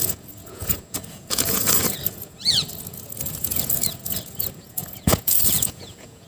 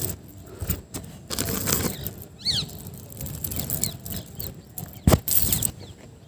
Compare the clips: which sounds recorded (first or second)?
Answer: second